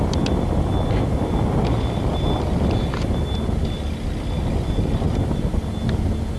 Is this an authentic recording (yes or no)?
yes